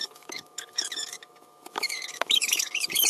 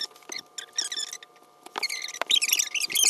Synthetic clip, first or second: first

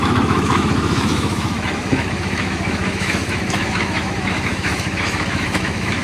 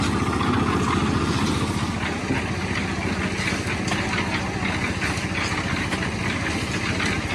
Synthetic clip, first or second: first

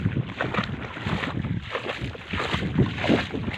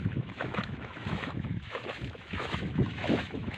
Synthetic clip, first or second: second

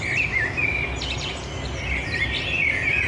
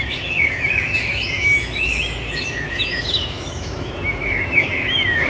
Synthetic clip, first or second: second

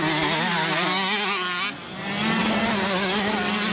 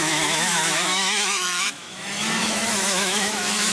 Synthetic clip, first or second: second